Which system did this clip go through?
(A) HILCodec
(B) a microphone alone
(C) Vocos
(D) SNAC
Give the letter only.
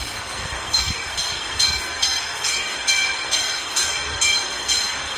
D